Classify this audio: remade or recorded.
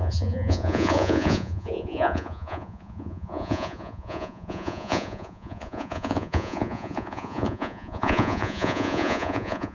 remade